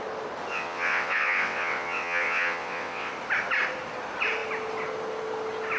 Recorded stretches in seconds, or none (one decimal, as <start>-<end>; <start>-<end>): 0.0-0.5; 3.1-5.8